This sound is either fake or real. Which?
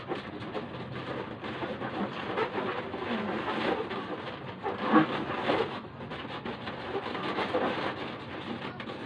real